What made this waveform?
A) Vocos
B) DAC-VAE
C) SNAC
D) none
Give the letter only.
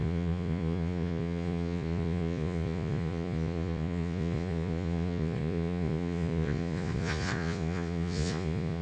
A